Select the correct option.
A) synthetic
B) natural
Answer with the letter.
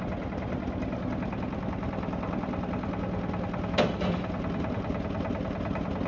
B